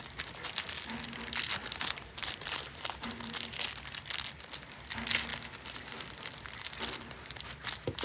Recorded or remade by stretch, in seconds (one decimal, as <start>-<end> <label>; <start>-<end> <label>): 0.0-1.6 recorded; 1.6-3.1 remade; 3.1-8.0 recorded